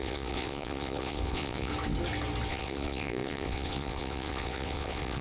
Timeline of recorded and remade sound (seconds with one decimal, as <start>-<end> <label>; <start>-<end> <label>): 0.0-1.7 remade; 1.7-2.5 recorded; 2.5-5.2 remade